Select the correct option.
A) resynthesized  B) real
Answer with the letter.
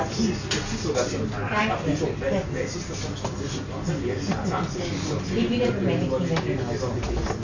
B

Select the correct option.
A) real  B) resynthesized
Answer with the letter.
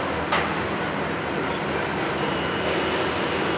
A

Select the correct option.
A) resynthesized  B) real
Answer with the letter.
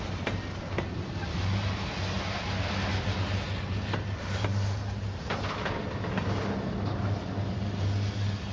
B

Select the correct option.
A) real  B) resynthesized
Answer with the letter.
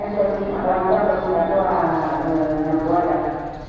A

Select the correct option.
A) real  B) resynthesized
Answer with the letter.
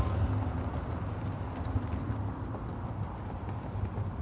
A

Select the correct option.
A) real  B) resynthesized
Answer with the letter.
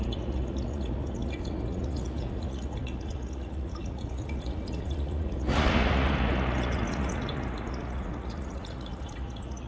B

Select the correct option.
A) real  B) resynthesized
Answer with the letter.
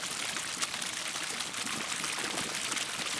A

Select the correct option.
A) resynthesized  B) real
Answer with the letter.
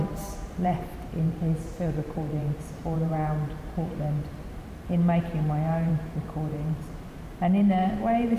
A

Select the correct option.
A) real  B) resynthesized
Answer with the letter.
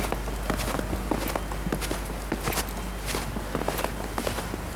A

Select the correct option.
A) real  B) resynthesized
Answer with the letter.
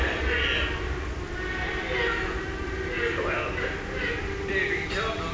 A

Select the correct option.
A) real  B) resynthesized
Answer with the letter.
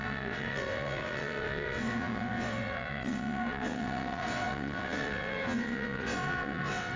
B